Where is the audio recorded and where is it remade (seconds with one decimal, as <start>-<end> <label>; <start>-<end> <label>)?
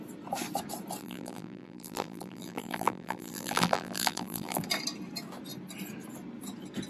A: 0.0-1.0 recorded; 1.0-4.6 remade; 4.6-6.9 recorded